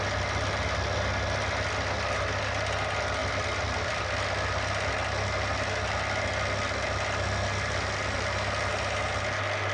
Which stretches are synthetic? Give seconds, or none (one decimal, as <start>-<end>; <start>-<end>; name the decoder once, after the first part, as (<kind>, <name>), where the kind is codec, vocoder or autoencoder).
3.2-4.0 (vocoder, BigVGAN v2)